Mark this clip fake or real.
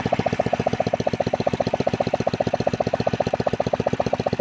fake